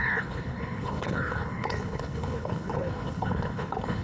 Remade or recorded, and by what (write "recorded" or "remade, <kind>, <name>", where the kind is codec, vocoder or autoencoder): remade, codec, HILCodec